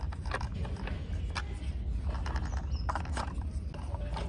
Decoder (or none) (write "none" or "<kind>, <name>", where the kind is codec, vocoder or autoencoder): none